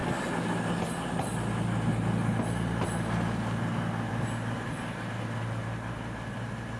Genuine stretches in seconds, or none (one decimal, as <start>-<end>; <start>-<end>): 0.0-6.8